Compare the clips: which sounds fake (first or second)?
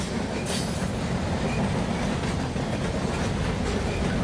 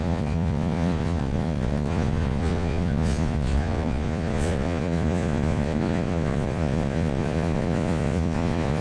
second